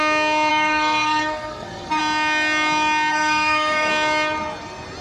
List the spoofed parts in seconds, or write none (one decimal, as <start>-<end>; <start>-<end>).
0.5-2.0; 3.1-3.9